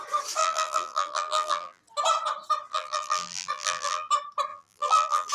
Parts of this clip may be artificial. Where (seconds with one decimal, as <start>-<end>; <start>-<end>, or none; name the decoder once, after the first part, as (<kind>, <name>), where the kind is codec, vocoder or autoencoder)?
0.4-1.8 (vocoder, BigVGAN v2); 2.7-4.1; 4.5-5.3